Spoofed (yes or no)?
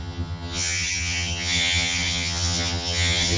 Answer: yes